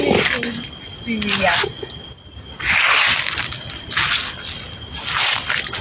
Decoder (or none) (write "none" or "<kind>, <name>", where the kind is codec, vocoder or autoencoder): none